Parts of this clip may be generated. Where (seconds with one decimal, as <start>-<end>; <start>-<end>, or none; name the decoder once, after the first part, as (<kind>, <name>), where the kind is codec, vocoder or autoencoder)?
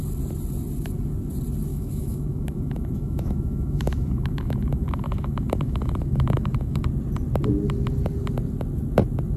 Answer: 1.7-6.8 (autoencoder, DAC-VAE)